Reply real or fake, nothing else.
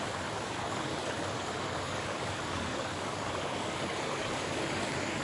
fake